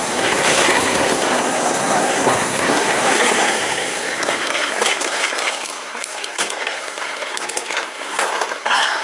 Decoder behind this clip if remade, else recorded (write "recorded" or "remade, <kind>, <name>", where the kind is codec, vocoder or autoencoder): remade, codec, SNAC